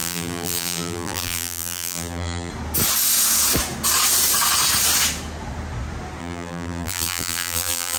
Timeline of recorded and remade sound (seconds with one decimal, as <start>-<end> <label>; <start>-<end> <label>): 0.0-2.5 remade; 2.5-6.2 recorded; 6.2-8.0 remade